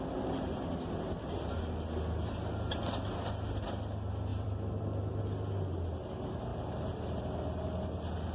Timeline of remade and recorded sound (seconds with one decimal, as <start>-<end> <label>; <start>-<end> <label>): 0.0-4.3 recorded; 4.3-5.2 remade; 5.2-8.3 recorded